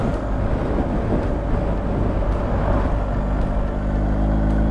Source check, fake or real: real